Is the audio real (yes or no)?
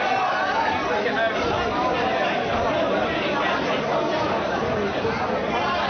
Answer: yes